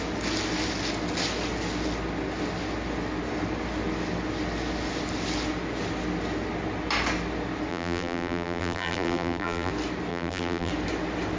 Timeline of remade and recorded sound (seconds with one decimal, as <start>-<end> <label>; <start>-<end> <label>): 0.0-7.7 recorded; 7.7-9.7 remade; 9.7-10.1 recorded; 10.1-10.7 remade; 10.7-11.4 recorded